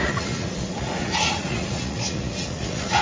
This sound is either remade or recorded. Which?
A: remade